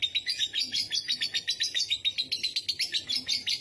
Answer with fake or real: real